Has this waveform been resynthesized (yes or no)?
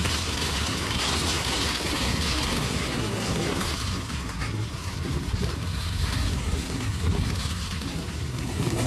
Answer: yes